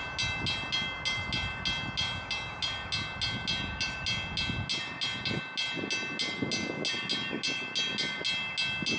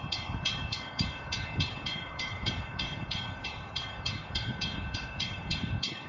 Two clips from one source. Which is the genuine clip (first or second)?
first